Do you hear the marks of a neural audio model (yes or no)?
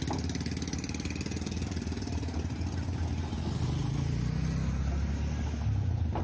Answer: no